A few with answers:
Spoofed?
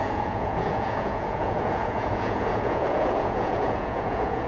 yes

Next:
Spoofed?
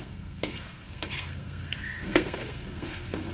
yes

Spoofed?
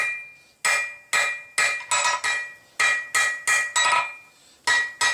no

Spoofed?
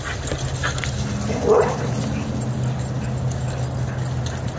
no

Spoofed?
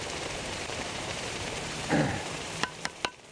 yes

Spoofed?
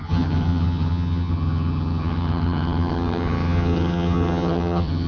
yes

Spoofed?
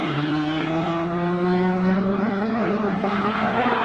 yes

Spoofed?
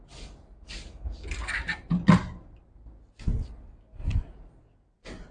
no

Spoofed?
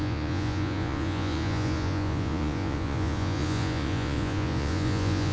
yes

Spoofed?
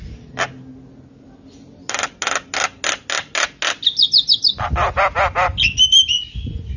no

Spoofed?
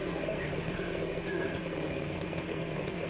yes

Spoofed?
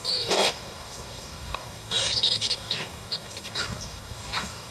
yes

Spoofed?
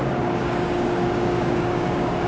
yes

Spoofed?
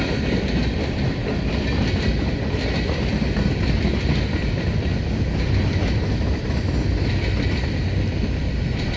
no